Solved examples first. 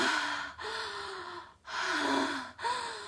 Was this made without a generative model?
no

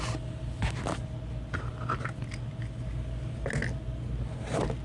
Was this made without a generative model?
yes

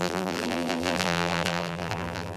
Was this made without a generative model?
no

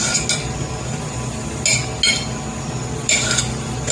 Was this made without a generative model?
yes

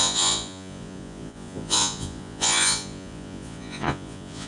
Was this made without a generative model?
no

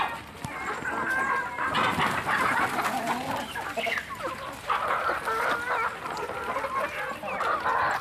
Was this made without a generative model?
yes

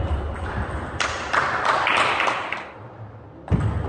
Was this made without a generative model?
yes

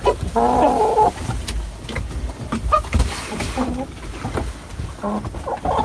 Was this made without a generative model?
yes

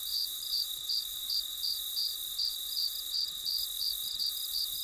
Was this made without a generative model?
no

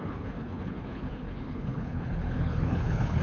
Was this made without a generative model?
no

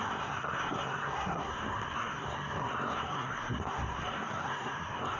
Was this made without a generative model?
no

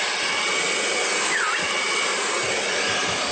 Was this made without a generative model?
yes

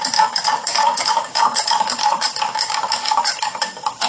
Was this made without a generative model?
no